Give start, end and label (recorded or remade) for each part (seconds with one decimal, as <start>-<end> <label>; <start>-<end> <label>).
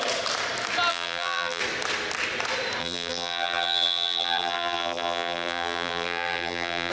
0.0-0.9 recorded; 0.9-1.6 remade; 1.6-2.8 recorded; 2.8-6.9 remade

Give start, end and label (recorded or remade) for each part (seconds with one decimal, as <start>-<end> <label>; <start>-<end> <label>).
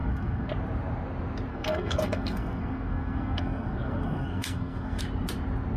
0.0-0.5 remade; 0.5-1.5 recorded; 1.5-5.0 remade; 5.0-5.8 recorded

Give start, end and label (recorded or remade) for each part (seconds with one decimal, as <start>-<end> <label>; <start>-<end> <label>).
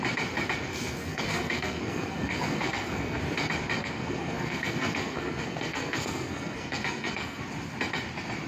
0.0-0.7 recorded; 0.7-3.2 remade; 3.2-3.8 recorded; 3.8-7.4 remade; 7.4-8.5 recorded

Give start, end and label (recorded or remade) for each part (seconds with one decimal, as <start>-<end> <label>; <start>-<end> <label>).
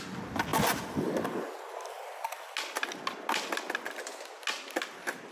0.0-5.3 recorded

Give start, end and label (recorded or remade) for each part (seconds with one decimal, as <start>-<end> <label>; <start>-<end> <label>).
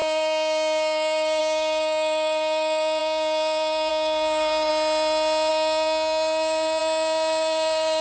0.0-4.7 remade; 4.7-5.5 recorded; 5.5-8.0 remade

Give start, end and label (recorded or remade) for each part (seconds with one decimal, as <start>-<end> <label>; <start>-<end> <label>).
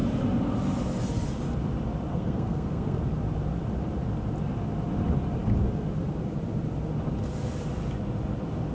0.0-2.1 recorded; 2.1-3.0 remade; 3.0-8.7 recorded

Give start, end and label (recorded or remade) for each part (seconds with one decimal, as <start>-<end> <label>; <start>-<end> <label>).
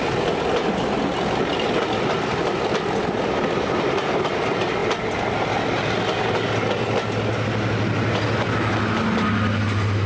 0.0-10.1 recorded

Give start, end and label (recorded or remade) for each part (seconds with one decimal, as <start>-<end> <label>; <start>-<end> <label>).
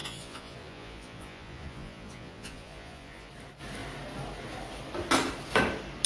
0.0-3.3 remade; 3.3-6.1 recorded